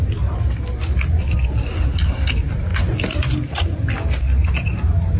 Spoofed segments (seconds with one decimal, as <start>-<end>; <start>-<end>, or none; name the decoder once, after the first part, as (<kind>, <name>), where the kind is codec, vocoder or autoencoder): none

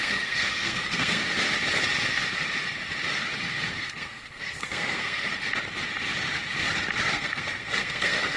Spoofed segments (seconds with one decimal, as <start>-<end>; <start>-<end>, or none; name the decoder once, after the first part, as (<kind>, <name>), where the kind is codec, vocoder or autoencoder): 0.0-1.2 (codec, SNAC); 3.7-5.3; 7.1-8.4

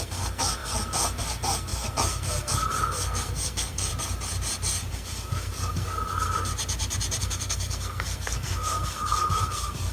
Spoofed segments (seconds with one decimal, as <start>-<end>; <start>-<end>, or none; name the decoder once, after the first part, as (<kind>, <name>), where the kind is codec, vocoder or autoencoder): 0.0-3.9 (codec, SNAC); 4.9-6.5; 7.2-9.9

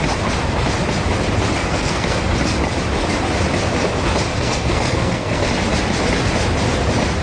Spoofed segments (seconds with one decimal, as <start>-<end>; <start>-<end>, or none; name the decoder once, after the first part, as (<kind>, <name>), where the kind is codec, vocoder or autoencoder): 1.6-2.2 (codec, SNAC); 4.3-5.5

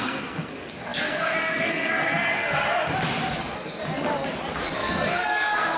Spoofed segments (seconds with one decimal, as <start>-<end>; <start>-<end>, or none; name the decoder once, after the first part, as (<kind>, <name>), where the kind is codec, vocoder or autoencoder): 0.0-2.8 (codec, SNAC); 3.4-3.8; 4.7-5.8